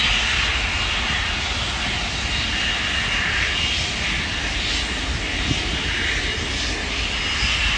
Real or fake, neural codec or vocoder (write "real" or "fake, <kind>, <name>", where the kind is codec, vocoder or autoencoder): real